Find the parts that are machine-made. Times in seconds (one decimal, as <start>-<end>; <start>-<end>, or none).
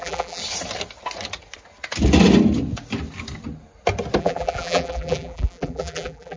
0.0-0.4; 4.2-6.4